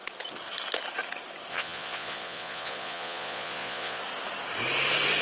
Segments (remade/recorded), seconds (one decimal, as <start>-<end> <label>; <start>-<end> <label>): 0.0-1.5 recorded; 1.5-4.0 remade; 4.0-5.2 recorded

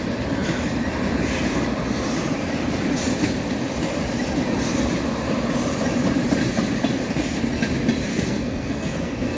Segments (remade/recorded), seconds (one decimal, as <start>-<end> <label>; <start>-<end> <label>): 0.0-8.1 recorded; 8.1-9.4 remade

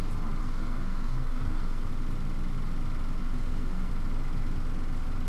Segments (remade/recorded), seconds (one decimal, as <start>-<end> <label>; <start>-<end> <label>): 0.0-0.4 recorded; 0.4-1.9 remade; 1.9-3.2 recorded; 3.2-3.9 remade; 3.9-5.3 recorded

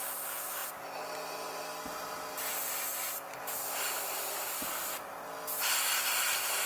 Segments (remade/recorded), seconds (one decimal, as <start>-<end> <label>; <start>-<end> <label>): 0.0-6.7 recorded

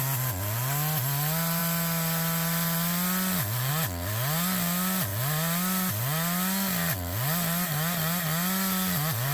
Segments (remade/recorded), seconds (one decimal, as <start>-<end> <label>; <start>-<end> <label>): 0.0-9.3 recorded